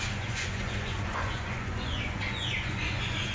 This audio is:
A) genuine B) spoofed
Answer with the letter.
B